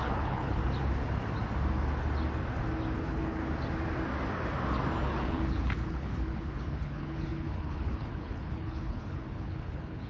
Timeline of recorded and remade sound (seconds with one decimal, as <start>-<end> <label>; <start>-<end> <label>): 0.0-0.6 remade; 0.6-3.0 recorded; 3.0-3.4 remade; 3.4-5.1 recorded; 5.1-10.1 remade